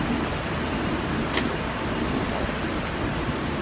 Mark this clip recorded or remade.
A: recorded